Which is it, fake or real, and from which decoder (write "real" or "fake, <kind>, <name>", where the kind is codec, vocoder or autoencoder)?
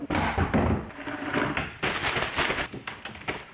fake, vocoder, BigVGAN v2